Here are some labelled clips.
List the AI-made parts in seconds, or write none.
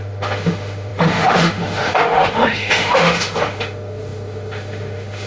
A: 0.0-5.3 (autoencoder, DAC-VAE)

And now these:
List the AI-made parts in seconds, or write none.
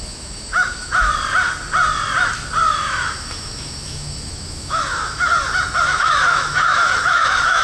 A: 0.0-1.1 (autoencoder, DAC-VAE); 2.7-5.3; 5.8-7.6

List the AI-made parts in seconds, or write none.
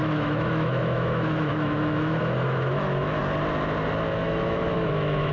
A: 0.0-3.2 (autoencoder, DAC-VAE); 4.2-5.3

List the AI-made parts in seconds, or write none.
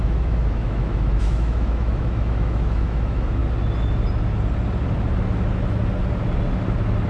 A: 0.0-3.4 (autoencoder, DAC-VAE)